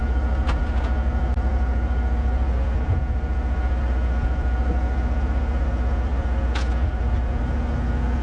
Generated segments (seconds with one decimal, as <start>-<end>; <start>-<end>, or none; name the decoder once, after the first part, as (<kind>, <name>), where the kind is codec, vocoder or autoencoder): none

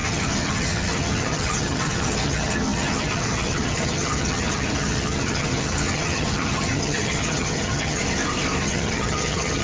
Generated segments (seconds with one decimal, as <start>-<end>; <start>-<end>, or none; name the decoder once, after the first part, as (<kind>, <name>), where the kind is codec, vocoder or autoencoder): 0.0-8.0 (vocoder, HiFi-GAN); 8.6-9.6

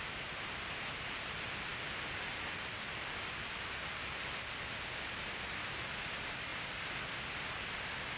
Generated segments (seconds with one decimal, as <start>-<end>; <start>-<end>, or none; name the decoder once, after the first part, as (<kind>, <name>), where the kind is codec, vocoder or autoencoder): none

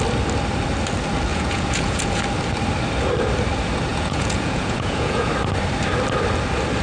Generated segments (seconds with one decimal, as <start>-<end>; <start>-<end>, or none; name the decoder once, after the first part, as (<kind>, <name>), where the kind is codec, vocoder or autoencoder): 1.3-2.2 (vocoder, Vocos); 3.9-5.3

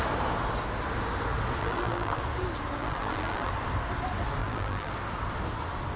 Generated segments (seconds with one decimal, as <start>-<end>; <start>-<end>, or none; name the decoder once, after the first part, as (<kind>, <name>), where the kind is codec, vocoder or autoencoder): 1.6-2.2 (vocoder, BigVGAN v2); 2.8-3.5; 4.4-4.9

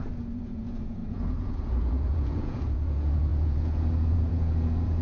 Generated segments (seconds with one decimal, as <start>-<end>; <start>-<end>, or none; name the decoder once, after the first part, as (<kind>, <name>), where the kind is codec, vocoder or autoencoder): 0.0-5.0 (vocoder, Vocos)